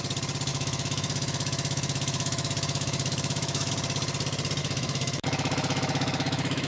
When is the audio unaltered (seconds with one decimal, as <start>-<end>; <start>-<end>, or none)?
0.0-0.5; 3.7-4.6